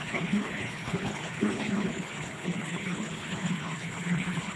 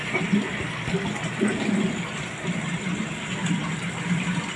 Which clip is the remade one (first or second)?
first